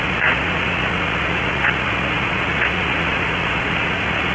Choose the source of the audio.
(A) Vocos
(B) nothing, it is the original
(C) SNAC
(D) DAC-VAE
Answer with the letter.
A